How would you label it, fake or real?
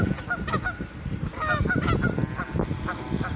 real